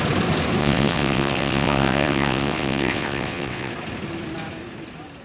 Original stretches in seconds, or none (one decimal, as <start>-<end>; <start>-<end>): 0.0-0.6; 3.7-5.2